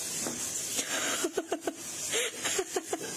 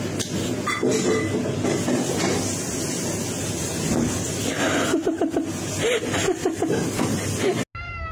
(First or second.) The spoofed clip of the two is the first